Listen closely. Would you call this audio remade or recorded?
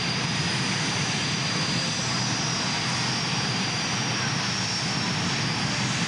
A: recorded